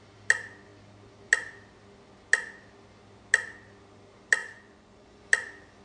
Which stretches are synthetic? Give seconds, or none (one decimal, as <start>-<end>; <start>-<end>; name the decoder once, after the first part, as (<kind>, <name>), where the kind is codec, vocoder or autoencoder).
4.4-5.2 (vocoder, Vocos)